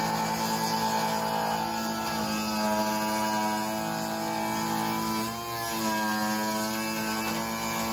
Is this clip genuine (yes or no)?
yes